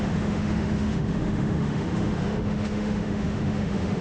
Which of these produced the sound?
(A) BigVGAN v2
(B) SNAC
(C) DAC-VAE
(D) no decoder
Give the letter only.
C